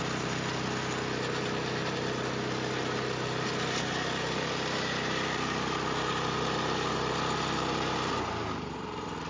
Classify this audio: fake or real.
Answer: real